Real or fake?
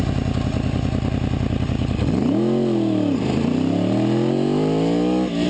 real